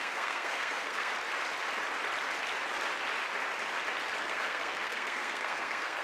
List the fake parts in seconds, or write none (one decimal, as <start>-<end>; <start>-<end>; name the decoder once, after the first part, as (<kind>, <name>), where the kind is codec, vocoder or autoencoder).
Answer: 0.0-1.1 (codec, SNAC); 4.2-6.0